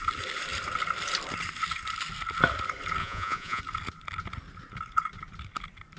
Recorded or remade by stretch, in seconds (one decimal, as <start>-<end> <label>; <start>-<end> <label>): 0.0-3.0 recorded; 3.0-3.6 remade; 3.6-6.0 recorded